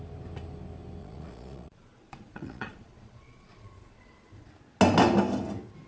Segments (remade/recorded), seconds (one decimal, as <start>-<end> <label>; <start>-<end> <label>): 0.0-1.0 recorded; 1.0-4.5 remade; 4.5-5.9 recorded